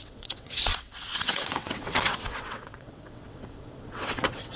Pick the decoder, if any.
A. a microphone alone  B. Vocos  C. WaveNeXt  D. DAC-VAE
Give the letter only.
C